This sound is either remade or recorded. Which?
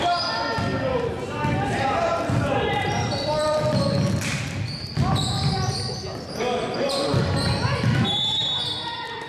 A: recorded